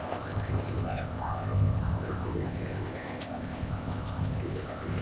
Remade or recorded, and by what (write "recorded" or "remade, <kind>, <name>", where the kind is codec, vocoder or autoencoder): remade, codec, ZipCodec